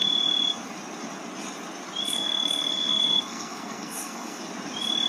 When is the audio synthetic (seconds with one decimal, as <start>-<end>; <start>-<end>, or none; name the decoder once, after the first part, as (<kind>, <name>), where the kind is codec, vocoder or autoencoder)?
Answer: 2.0-4.4 (codec, SNAC)

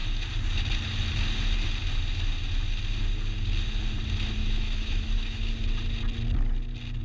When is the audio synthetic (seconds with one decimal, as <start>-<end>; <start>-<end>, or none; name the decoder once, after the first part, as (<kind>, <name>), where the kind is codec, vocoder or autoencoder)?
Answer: 4.4-5.5 (autoencoder, DAC-VAE)

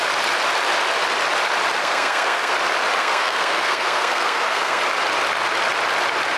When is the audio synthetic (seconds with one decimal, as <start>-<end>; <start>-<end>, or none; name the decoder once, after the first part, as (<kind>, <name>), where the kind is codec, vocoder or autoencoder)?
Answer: 1.8-2.5 (codec, SNAC); 3.0-4.8